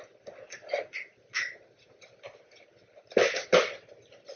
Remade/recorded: recorded